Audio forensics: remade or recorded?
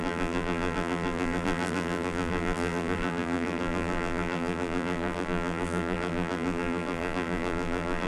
remade